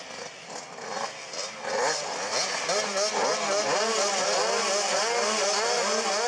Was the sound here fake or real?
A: real